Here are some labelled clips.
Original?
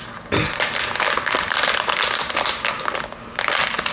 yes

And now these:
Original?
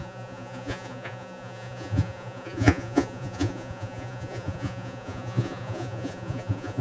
no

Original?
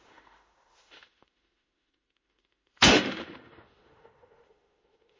no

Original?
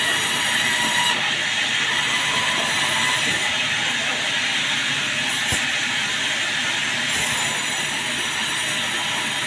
no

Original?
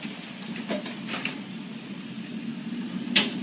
yes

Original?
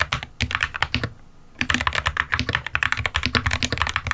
yes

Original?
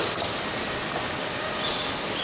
yes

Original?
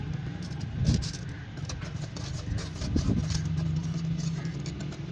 yes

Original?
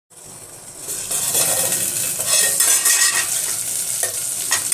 yes